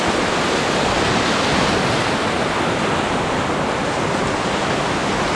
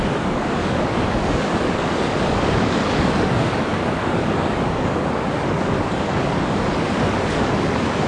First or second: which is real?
first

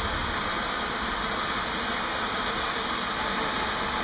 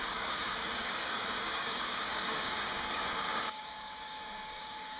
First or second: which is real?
first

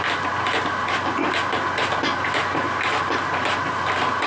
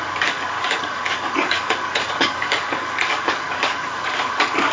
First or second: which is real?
first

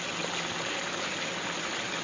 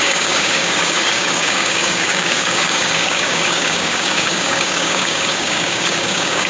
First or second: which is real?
first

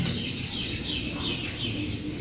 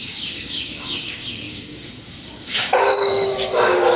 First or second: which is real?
first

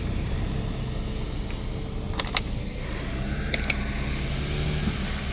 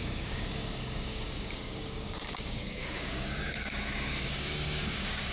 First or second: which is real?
first